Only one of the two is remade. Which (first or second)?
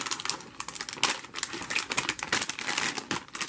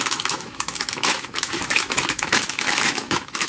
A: second